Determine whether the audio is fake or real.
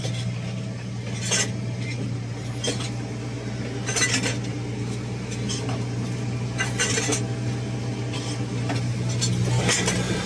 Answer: real